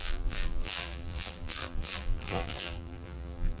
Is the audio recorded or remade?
remade